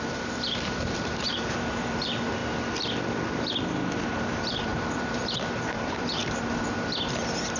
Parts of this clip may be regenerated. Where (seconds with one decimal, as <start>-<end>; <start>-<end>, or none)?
0.0-2.4; 3.9-6.2

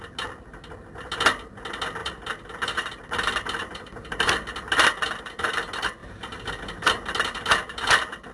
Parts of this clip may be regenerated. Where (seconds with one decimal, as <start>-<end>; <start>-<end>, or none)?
none

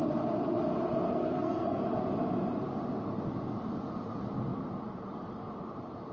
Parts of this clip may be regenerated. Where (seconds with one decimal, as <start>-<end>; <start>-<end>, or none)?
1.1-1.8

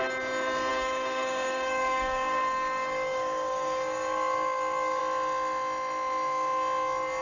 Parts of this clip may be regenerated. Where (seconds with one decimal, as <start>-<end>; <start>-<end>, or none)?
0.7-5.0

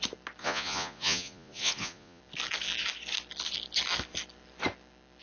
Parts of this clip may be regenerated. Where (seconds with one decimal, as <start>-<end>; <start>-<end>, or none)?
0.4-2.2